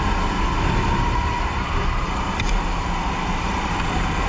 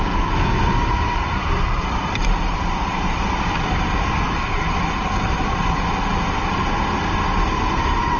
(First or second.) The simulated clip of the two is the second